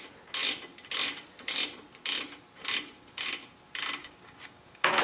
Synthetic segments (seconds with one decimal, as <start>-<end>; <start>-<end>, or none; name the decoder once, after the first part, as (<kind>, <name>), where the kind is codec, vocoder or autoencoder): 4.0-5.0 (codec, DAC)